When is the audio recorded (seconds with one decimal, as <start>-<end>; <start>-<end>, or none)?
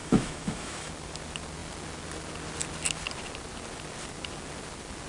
0.9-5.1